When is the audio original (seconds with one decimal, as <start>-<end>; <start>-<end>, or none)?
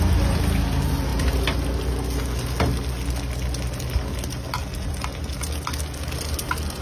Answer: 0.0-6.8